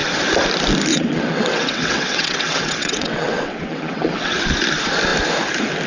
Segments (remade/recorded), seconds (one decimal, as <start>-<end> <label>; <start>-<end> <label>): 0.0-0.9 recorded; 0.9-4.4 remade; 4.4-5.9 recorded